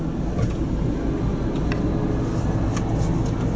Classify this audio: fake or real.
real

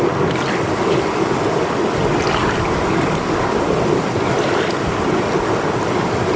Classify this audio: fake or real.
real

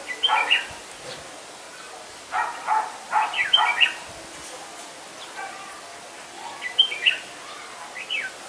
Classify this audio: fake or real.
real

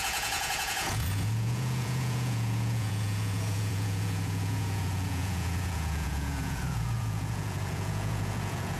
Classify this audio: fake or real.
fake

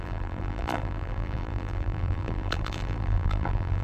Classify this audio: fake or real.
fake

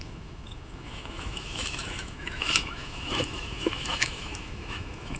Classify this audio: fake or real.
fake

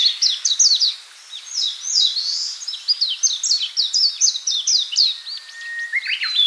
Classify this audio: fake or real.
real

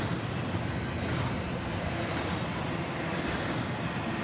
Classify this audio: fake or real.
real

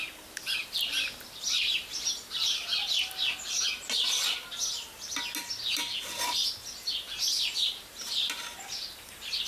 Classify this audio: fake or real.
real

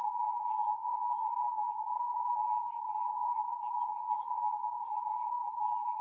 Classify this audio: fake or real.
fake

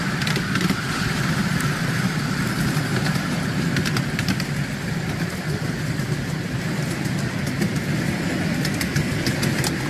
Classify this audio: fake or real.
real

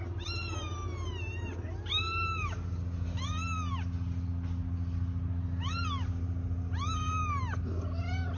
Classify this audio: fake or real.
real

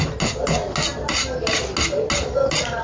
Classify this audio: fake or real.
real